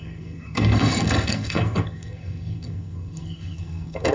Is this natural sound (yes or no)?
no